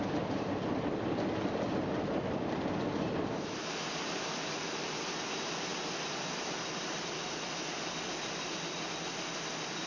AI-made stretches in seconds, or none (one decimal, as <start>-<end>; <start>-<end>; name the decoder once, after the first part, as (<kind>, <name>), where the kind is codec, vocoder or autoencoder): none